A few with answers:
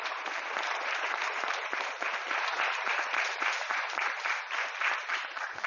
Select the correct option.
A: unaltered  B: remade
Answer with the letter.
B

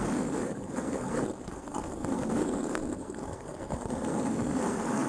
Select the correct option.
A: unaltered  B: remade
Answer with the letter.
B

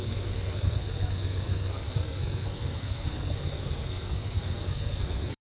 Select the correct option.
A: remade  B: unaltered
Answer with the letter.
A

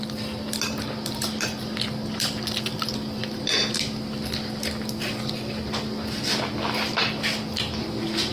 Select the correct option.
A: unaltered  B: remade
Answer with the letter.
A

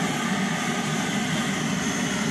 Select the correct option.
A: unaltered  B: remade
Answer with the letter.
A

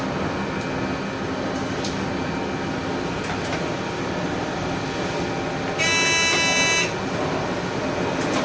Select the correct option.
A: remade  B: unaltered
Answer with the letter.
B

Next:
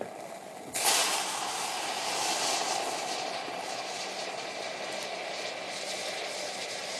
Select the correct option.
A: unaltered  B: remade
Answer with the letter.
A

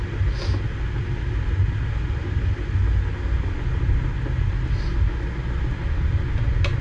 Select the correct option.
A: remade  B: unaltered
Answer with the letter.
B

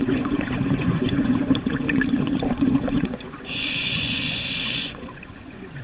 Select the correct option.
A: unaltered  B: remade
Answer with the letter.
B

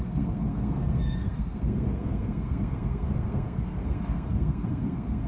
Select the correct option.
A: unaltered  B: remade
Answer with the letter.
B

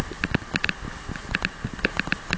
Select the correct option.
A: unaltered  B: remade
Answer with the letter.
A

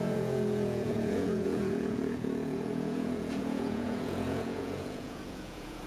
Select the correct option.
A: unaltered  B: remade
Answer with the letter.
B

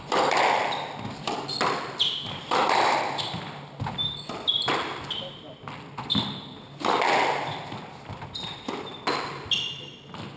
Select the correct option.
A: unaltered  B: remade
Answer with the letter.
A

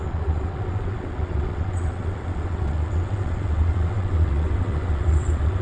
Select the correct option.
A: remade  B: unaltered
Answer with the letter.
A